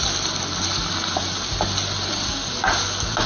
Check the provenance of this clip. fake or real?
real